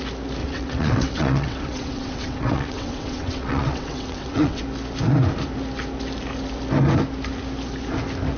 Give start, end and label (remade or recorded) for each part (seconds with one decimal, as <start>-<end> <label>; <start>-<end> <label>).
0.0-0.4 recorded; 0.4-4.6 remade; 4.6-8.4 recorded